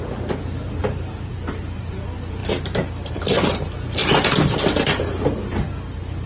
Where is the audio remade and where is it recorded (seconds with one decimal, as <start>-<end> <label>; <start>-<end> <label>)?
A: 0.0-0.8 recorded; 0.8-1.6 remade; 1.6-2.4 recorded; 2.4-3.1 remade; 3.1-6.3 recorded